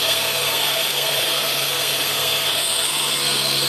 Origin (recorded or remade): remade